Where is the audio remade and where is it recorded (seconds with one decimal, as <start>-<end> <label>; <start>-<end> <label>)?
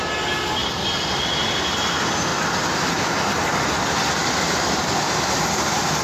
0.0-0.6 recorded; 0.6-1.9 remade; 1.9-4.2 recorded; 4.2-5.4 remade; 5.4-6.0 recorded